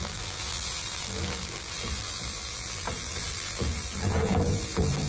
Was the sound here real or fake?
fake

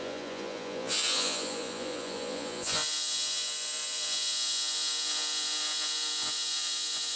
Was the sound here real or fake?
fake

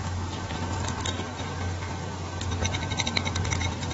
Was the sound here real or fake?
real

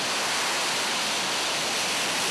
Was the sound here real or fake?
real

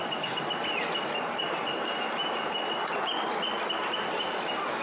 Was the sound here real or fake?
real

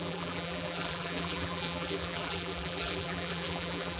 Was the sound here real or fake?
fake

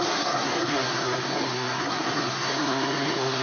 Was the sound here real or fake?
fake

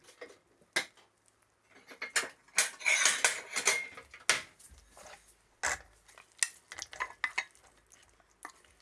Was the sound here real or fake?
real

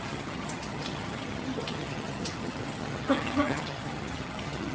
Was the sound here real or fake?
fake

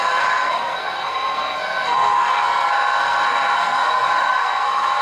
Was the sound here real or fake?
fake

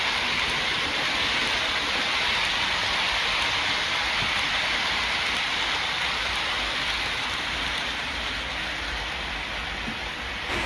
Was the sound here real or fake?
real